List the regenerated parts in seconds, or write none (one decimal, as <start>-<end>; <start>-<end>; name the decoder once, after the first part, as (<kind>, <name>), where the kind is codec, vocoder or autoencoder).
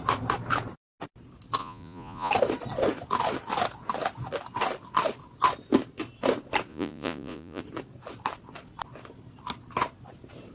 1.6-2.3 (vocoder, Vocos); 6.7-7.6